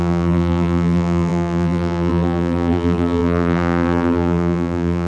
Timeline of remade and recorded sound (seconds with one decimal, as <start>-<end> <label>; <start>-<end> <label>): 0.0-5.1 remade